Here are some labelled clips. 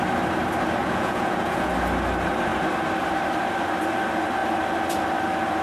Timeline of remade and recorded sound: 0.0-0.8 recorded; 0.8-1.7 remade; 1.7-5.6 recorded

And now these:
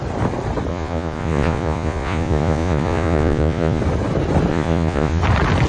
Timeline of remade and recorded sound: 0.0-0.7 recorded; 0.7-3.8 remade; 3.8-4.5 recorded; 4.5-5.2 remade; 5.2-5.7 recorded

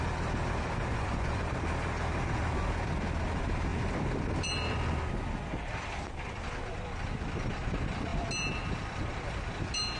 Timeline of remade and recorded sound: 0.0-0.9 recorded; 0.9-1.4 remade; 1.4-10.0 recorded